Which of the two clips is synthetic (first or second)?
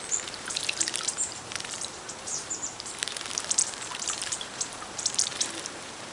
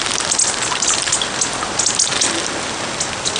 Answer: first